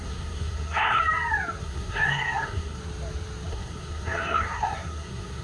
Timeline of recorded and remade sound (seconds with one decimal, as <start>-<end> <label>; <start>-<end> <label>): 0.0-1.0 remade; 1.0-1.6 recorded; 1.6-2.8 remade; 2.8-3.5 recorded; 3.5-5.4 remade